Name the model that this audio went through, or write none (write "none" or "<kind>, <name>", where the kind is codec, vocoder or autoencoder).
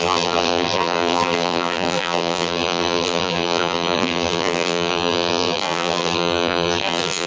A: vocoder, BigVGAN v2